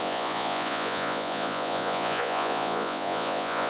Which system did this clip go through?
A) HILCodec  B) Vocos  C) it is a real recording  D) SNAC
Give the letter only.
B